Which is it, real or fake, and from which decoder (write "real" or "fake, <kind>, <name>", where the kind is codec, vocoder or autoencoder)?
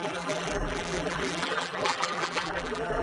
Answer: fake, vocoder, BigVGAN v2